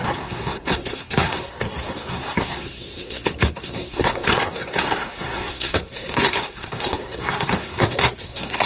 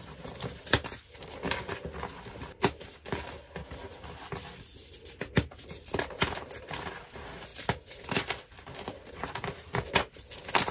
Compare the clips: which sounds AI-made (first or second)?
first